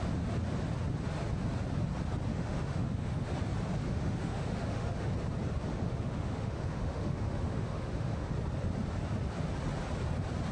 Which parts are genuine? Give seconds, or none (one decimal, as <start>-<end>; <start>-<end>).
0.0-2.3; 3.3-3.8; 5.1-5.7; 8.3-10.5